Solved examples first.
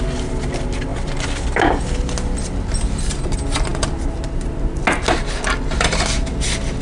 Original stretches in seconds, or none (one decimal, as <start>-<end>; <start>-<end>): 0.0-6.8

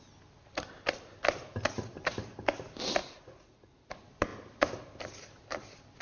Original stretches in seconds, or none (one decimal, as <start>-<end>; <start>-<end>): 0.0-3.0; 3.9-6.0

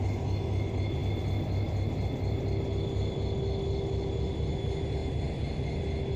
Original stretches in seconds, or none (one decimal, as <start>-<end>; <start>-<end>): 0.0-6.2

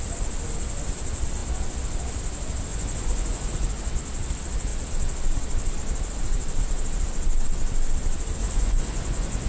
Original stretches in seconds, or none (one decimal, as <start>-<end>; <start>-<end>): 0.0-2.7; 3.7-8.4